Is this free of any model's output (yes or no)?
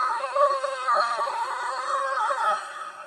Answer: no